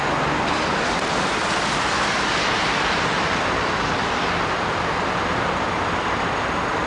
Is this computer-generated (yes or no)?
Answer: no